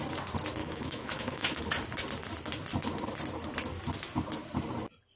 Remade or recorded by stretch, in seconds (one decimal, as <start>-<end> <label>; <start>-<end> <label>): 0.0-0.6 recorded; 0.6-1.6 remade; 1.6-5.2 recorded